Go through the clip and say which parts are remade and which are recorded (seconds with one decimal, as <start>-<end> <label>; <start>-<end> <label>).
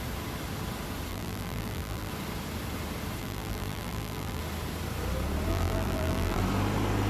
0.0-1.1 recorded; 1.1-2.1 remade; 2.1-3.2 recorded; 3.2-4.4 remade; 4.4-5.5 recorded; 5.5-6.4 remade; 6.4-7.1 recorded